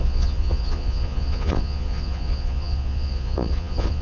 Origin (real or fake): fake